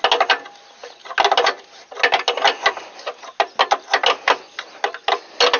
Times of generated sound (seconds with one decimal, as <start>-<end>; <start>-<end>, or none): none